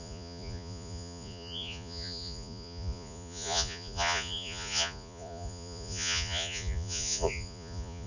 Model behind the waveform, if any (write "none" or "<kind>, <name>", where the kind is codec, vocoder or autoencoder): vocoder, Vocos